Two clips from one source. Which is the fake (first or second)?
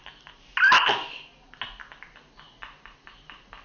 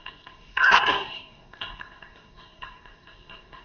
second